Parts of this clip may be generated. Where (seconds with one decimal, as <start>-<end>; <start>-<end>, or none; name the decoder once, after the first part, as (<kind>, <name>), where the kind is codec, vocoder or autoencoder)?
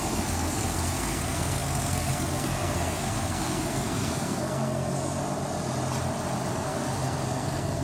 0.0-5.2 (codec, SNAC); 6.5-7.8